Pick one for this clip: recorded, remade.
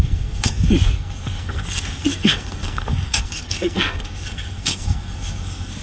remade